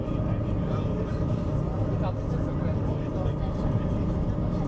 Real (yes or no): yes